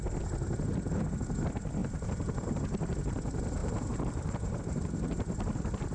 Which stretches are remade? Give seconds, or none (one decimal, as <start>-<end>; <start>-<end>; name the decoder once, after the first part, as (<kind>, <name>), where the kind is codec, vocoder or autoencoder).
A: 1.8-2.6 (vocoder, BigVGAN v2); 3.6-4.6